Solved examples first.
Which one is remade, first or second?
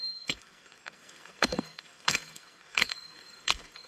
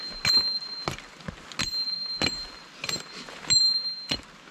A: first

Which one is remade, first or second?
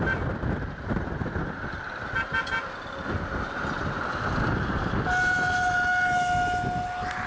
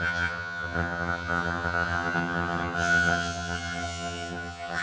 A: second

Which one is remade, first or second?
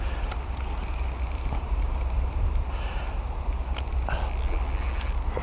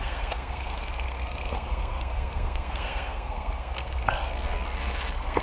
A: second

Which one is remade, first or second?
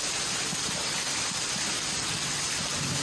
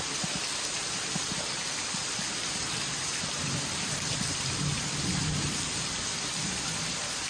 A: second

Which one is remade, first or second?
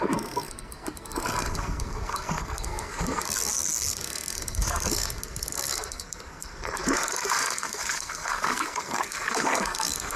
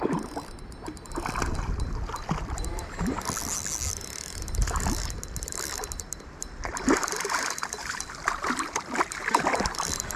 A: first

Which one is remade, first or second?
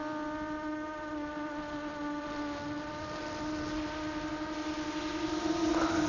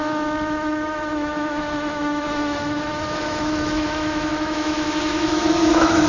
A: second